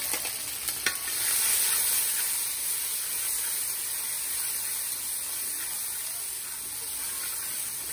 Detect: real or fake real